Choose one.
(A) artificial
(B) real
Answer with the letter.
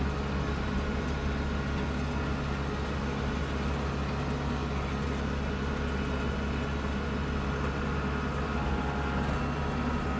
B